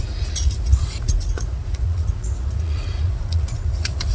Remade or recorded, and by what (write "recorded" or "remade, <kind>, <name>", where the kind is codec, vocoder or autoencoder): remade, vocoder, Vocos